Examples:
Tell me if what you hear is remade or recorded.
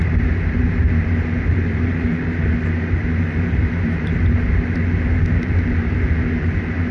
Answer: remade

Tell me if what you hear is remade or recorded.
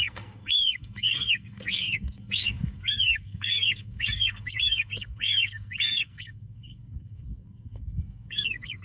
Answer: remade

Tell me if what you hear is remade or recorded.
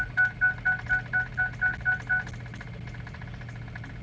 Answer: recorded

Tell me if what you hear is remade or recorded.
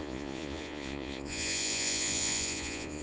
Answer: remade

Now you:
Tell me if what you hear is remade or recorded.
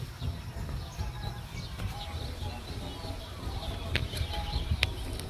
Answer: recorded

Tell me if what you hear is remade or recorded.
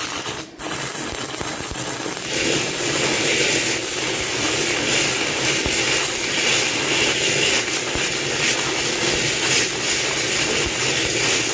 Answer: recorded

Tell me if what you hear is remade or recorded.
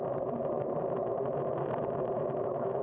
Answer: remade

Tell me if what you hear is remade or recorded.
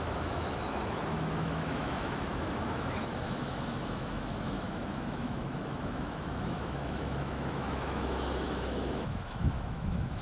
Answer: remade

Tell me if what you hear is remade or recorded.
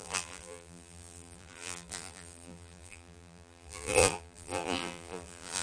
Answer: remade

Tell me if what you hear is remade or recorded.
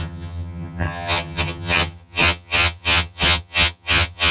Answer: remade